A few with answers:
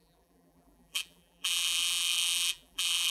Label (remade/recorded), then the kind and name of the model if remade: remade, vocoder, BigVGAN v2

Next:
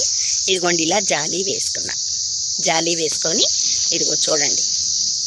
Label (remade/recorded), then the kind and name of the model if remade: remade, codec, HILCodec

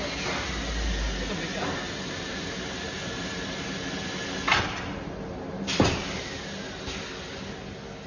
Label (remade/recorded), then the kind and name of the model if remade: recorded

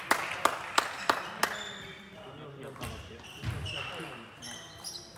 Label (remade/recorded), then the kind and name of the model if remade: recorded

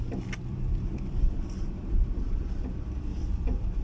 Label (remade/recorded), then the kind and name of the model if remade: remade, vocoder, BigVGAN v2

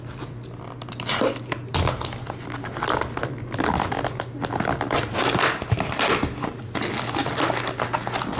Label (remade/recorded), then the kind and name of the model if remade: recorded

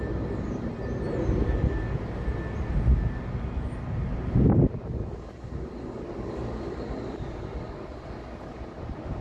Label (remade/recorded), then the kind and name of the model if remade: recorded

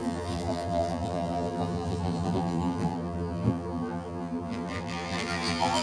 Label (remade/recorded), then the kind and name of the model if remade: remade, vocoder, BigVGAN v2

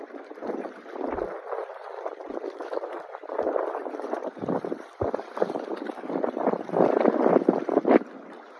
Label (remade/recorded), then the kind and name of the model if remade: remade, vocoder, BigVGAN v2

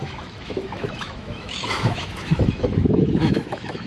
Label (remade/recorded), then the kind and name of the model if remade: remade, autoencoder, DAC-VAE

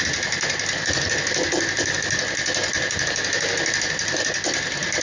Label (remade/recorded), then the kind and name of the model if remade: recorded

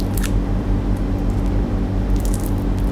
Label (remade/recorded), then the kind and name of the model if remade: recorded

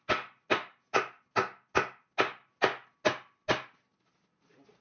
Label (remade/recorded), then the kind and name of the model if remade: recorded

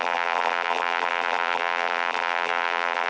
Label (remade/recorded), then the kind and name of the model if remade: remade, vocoder, BigVGAN v2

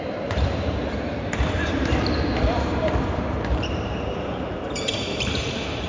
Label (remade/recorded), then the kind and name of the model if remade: remade, vocoder, BigVGAN v2